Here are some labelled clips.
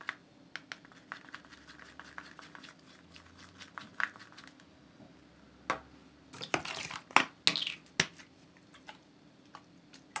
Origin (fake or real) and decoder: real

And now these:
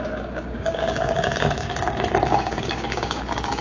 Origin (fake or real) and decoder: fake, codec, DAC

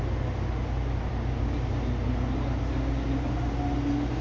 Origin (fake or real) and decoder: real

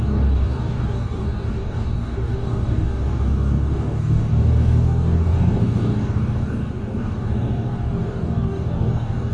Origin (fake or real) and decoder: fake, codec, DAC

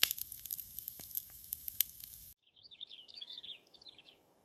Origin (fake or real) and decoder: fake, codec, DAC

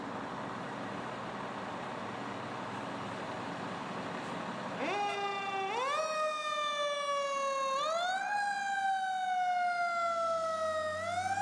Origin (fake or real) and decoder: real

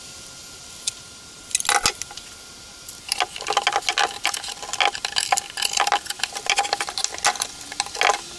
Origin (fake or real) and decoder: real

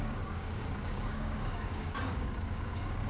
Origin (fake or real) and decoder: fake, codec, DAC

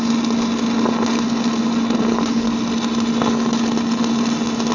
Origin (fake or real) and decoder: real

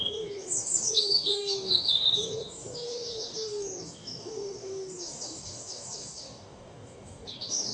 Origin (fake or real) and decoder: fake, codec, DAC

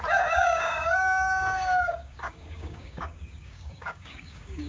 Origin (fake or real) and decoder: fake, codec, DAC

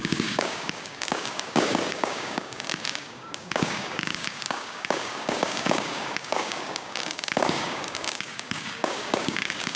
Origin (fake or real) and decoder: fake, codec, DAC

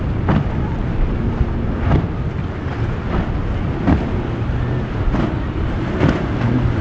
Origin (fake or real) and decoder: real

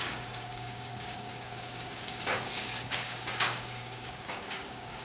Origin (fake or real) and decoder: fake, codec, DAC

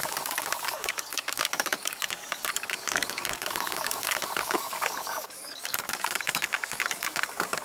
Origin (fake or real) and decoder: fake, codec, DAC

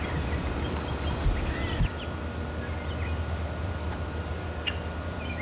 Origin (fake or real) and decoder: real